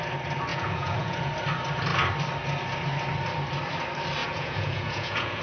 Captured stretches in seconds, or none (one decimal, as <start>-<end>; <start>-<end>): 0.0-0.5; 1.3-4.2